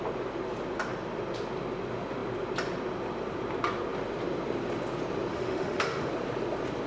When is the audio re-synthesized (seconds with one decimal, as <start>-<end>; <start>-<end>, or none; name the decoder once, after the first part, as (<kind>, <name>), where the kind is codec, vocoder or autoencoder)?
5.3-6.1 (autoencoder, DAC-VAE)